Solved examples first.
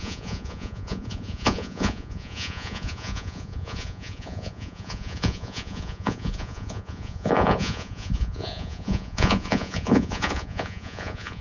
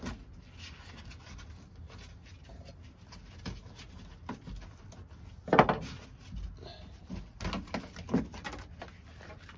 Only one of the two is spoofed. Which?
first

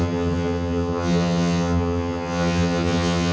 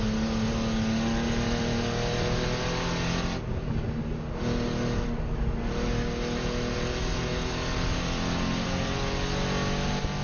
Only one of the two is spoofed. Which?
first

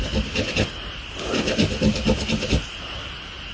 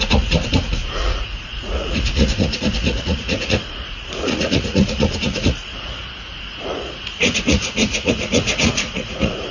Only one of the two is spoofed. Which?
second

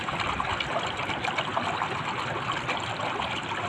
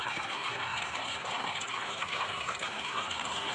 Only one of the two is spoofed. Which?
second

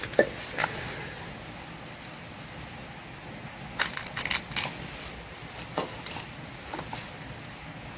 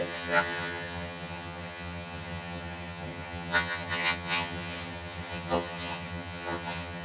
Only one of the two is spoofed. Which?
second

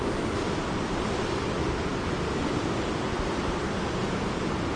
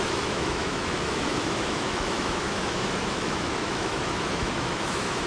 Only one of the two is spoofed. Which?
second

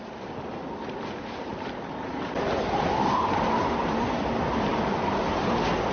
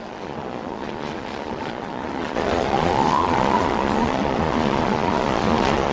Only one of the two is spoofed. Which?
second